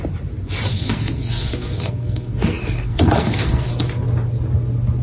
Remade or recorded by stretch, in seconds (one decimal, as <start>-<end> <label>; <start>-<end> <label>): 0.0-0.7 recorded; 0.7-3.7 remade; 3.7-5.0 recorded

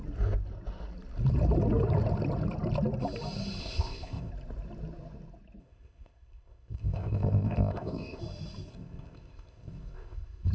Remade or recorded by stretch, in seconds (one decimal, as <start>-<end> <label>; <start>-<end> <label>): 0.0-3.6 recorded; 3.6-4.3 remade; 4.3-5.6 recorded; 5.6-8.2 remade; 8.2-8.7 recorded; 8.7-10.5 remade